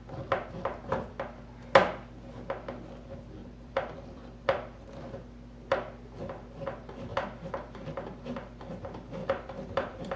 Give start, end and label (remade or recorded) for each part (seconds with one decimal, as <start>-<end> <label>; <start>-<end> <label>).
0.0-3.4 recorded; 3.4-4.9 remade; 4.9-9.2 recorded; 9.2-10.2 remade